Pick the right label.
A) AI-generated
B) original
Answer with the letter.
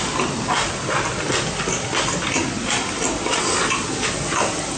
B